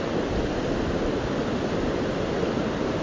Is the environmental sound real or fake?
real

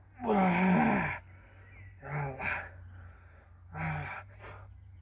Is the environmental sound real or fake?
real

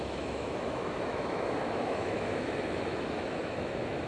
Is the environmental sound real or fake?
fake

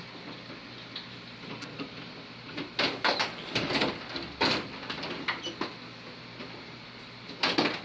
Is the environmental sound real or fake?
real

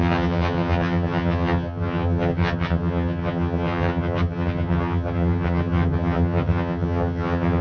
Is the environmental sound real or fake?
fake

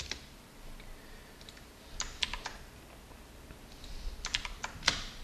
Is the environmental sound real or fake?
real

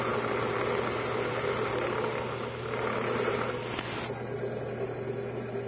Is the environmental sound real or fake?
real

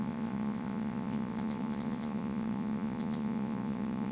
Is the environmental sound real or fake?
fake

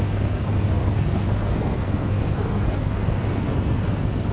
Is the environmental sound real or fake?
fake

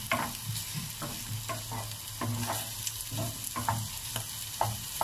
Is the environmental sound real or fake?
real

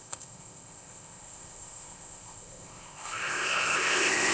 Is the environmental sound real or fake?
fake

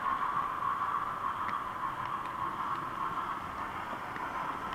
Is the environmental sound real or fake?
real